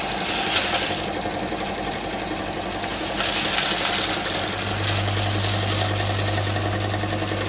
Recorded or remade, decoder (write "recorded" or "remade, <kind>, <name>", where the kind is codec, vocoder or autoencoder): recorded